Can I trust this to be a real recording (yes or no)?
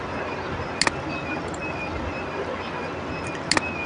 yes